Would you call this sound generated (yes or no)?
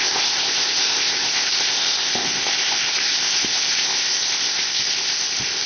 yes